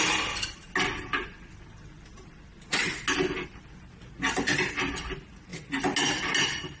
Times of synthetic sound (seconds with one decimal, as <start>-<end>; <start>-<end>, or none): none